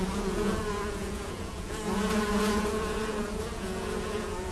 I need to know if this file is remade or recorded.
remade